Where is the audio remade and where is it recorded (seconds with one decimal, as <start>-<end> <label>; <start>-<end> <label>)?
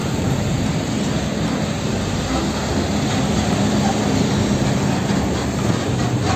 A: 0.0-1.6 remade; 1.6-6.4 recorded